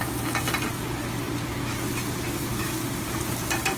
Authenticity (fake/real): real